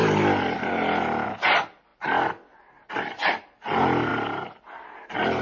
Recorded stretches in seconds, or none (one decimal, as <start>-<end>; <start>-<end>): 0.0-5.4